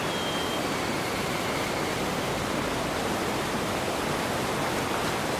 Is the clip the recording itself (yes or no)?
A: yes